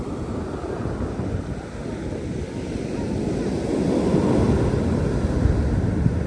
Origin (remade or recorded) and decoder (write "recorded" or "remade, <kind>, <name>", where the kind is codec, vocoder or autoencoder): recorded